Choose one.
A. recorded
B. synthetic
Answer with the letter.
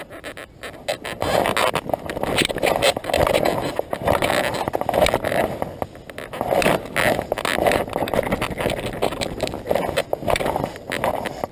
A